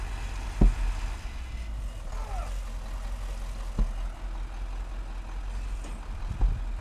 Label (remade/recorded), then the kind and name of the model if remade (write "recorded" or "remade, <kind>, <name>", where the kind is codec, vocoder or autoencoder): recorded